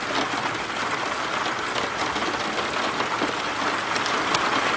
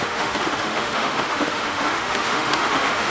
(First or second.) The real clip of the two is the first